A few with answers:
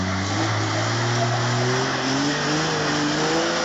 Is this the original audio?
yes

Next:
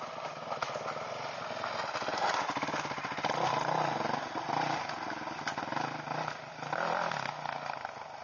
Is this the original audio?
yes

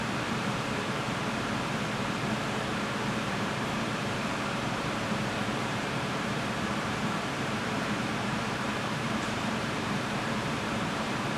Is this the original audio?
no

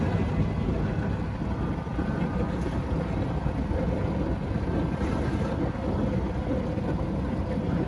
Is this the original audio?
yes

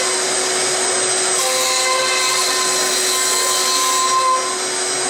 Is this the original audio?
yes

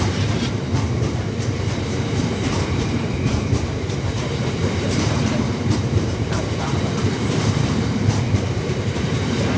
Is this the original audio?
no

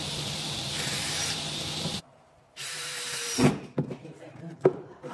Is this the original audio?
no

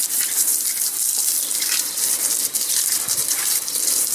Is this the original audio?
no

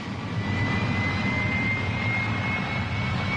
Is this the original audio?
yes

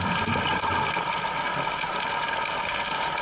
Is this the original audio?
no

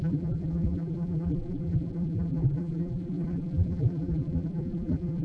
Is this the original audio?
no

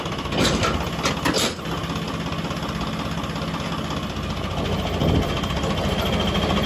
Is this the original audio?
yes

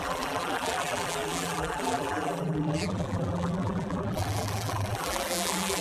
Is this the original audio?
no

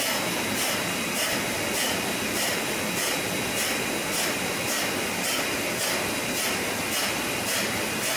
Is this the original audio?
yes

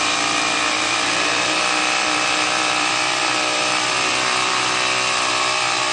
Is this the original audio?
no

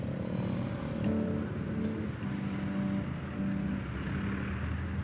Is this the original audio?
yes